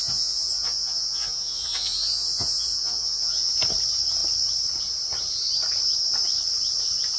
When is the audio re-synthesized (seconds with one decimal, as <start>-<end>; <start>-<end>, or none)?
0.0-3.5